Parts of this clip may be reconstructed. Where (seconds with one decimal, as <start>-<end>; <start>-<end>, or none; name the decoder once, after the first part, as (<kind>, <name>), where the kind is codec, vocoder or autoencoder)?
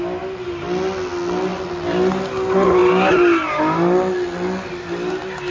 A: none